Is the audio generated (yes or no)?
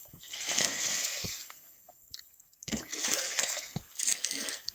yes